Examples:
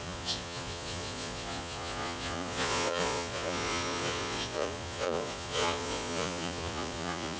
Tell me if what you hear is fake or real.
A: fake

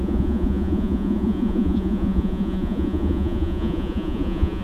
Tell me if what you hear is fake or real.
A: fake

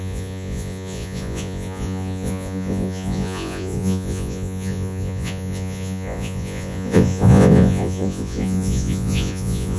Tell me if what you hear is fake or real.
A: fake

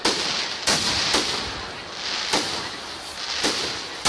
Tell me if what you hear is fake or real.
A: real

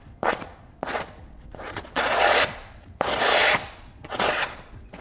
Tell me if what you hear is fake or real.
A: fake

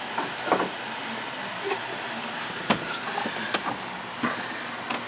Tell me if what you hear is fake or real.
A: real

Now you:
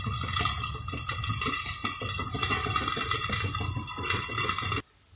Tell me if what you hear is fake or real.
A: real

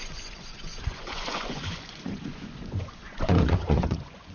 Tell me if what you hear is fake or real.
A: fake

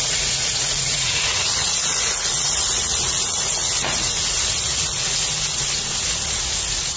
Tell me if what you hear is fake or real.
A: fake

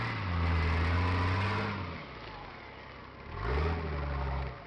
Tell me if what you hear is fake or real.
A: real